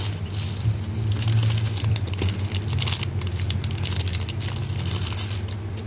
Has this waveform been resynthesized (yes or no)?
no